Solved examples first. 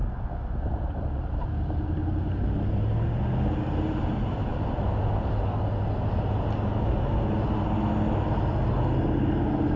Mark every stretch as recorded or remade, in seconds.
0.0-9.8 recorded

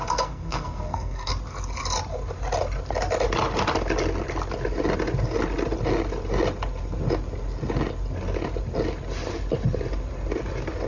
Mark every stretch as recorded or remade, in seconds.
0.0-1.3 remade; 1.3-10.9 recorded

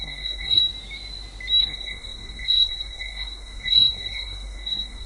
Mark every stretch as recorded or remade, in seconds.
0.0-0.6 remade; 0.6-1.6 recorded; 1.6-5.1 remade

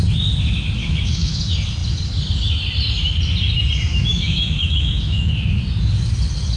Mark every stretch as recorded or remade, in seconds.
0.0-0.8 recorded; 0.8-1.4 remade; 1.4-3.9 recorded; 3.9-5.6 remade; 5.6-6.6 recorded

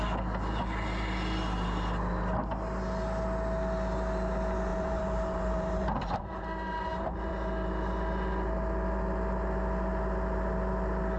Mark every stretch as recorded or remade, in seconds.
0.0-4.7 recorded; 4.7-7.3 remade; 7.3-11.2 recorded

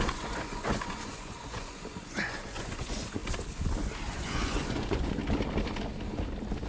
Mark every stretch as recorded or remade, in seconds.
0.0-3.2 remade; 3.2-4.1 recorded; 4.1-5.2 remade; 5.2-6.7 recorded